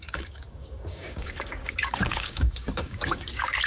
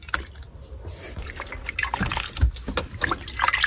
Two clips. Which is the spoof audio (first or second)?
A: first